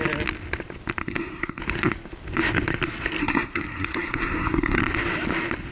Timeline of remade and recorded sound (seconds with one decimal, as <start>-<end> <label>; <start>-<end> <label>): 0.0-1.0 recorded; 1.0-1.6 remade; 1.6-3.2 recorded; 3.2-4.8 remade; 4.8-5.7 recorded